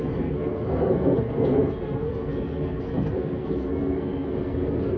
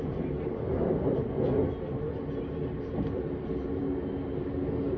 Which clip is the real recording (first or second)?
second